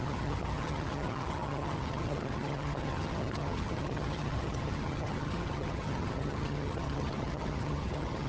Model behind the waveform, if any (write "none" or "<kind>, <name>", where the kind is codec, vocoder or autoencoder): vocoder, HiFi-GAN